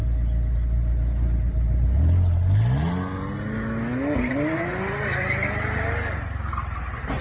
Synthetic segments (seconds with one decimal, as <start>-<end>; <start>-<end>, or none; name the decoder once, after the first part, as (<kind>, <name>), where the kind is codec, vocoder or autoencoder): none

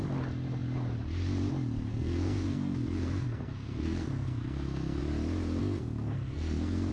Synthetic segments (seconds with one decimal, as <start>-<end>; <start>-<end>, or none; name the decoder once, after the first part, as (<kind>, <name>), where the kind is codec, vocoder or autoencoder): 1.9-5.0 (codec, SNAC); 5.6-6.9

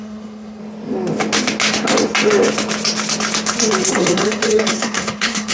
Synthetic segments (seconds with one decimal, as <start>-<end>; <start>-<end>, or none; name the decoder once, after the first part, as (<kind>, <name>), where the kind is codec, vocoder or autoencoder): 0.0-0.6 (codec, SNAC); 3.9-5.5